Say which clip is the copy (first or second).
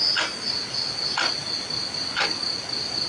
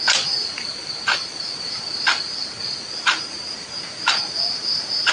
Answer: second